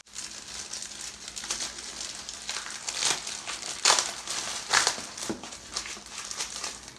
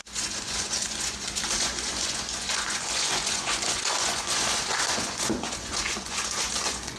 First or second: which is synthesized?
second